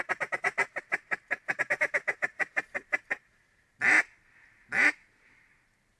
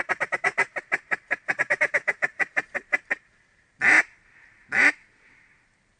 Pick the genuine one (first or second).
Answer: first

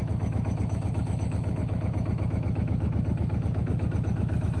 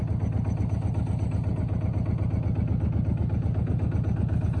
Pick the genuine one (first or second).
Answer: second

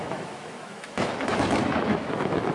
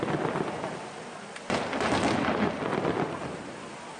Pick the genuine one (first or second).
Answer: second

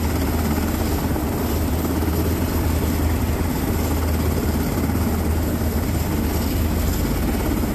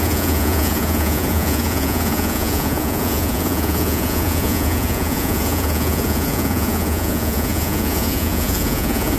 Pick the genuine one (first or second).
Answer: first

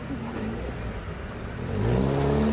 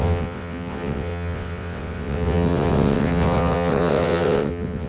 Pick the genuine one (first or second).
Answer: first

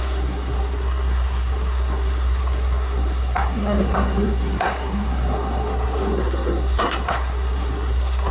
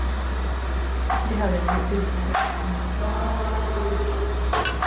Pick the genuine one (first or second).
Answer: second